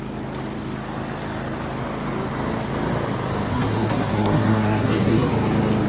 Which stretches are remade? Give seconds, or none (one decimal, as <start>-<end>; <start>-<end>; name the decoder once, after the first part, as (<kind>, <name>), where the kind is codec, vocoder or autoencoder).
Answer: 3.5-5.3 (codec, SNAC)